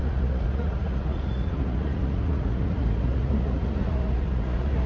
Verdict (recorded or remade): remade